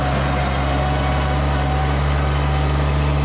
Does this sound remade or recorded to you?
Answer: recorded